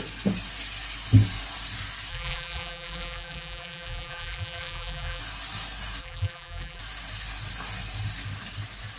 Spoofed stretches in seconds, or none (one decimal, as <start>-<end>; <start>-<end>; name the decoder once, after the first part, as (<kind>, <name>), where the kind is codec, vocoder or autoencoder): 2.1-5.2 (vocoder, BigVGAN v2); 6.0-6.8